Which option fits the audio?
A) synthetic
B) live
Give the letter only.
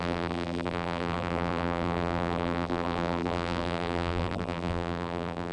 A